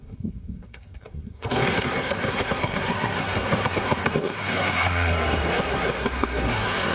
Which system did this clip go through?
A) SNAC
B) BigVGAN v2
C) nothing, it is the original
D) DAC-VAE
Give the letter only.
A